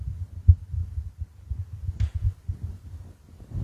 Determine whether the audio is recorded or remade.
recorded